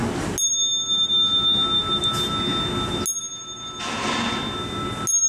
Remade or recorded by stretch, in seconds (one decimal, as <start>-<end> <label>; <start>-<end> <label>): 0.0-5.3 recorded